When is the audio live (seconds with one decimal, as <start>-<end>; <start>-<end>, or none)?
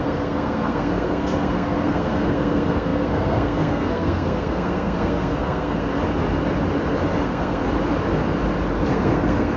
5.9-7.1; 7.6-8.9